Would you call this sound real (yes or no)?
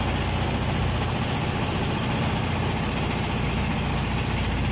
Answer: yes